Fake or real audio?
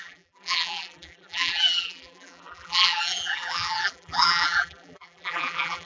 fake